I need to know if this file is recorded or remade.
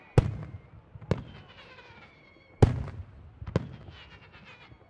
recorded